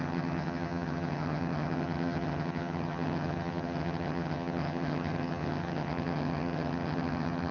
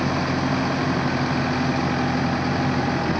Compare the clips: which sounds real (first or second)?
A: second